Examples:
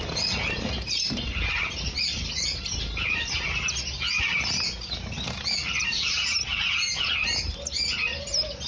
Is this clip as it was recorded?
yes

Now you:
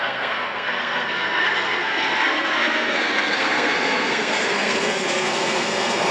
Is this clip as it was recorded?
no